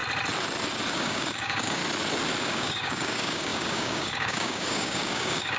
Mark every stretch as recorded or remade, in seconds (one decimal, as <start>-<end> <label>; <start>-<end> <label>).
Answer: 0.0-0.9 recorded; 0.9-1.8 remade; 1.8-2.4 recorded; 2.4-5.6 remade